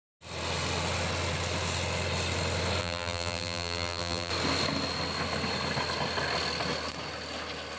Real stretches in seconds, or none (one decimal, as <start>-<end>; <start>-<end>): 0.0-2.8; 4.3-7.8